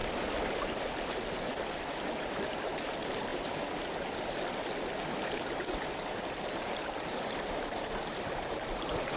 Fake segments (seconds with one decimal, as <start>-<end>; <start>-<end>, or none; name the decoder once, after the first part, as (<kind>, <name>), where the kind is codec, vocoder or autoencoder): 2.3-3.3 (vocoder, BigVGAN v2); 6.1-9.2